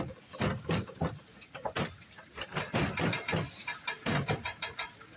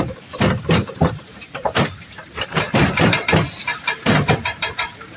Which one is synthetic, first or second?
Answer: second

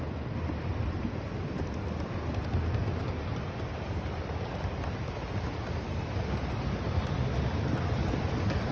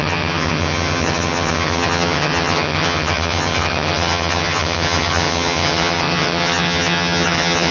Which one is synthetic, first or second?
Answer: second